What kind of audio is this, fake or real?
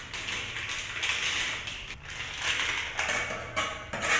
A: real